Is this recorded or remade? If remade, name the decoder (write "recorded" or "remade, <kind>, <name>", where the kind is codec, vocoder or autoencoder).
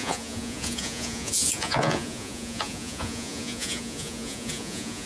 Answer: remade, vocoder, Vocos